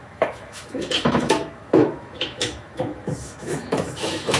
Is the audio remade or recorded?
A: remade